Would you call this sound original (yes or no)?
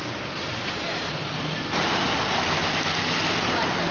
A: no